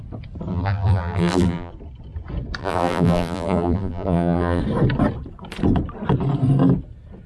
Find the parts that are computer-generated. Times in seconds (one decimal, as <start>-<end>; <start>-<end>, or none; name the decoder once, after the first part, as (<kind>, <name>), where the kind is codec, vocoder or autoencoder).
0.5-1.7 (vocoder, BigVGAN v2); 2.6-4.6